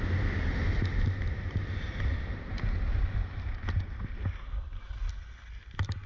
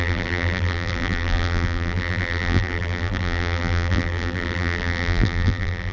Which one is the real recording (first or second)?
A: first